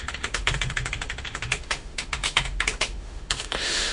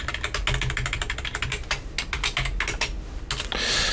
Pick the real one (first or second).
second